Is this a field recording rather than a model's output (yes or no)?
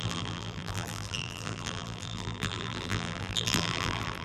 no